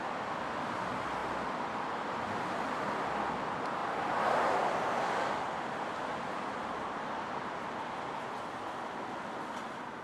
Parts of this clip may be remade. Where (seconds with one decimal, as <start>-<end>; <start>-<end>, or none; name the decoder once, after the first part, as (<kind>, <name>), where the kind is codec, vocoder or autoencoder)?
6.1-7.5 (vocoder, BigVGAN v2)